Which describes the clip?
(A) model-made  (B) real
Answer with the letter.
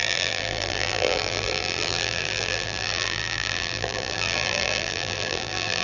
A